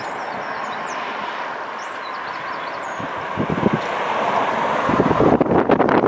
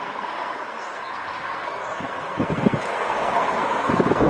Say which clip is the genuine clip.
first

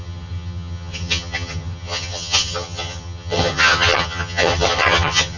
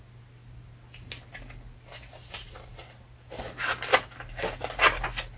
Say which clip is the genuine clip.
second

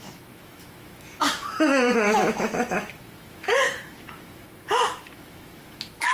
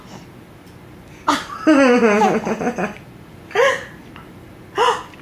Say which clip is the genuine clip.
second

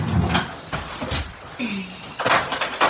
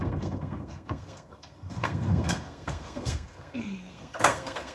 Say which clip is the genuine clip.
first